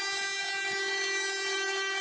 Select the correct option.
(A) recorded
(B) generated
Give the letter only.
A